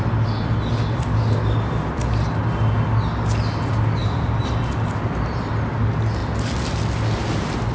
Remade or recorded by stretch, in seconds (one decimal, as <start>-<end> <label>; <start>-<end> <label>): 0.0-4.0 recorded; 4.0-4.6 remade; 4.6-7.7 recorded